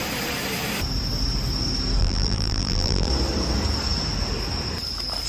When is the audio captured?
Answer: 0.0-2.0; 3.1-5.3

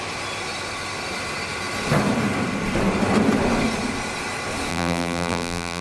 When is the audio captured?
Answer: 0.0-4.7